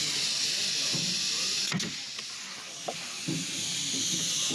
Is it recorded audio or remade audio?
recorded